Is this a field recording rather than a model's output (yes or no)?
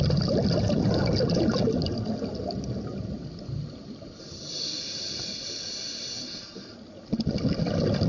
yes